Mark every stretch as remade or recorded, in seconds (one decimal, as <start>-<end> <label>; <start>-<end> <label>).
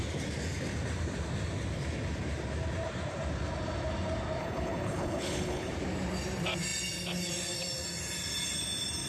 0.0-4.4 recorded; 4.4-5.7 remade; 5.7-9.1 recorded